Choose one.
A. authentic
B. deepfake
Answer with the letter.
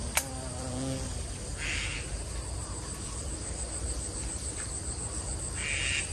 A